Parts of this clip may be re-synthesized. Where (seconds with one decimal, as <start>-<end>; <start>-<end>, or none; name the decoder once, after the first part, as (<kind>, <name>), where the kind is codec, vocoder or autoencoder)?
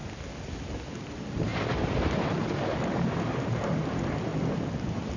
1.0-4.3 (vocoder, BigVGAN v2)